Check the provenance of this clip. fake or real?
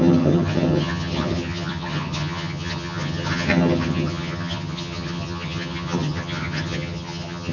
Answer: fake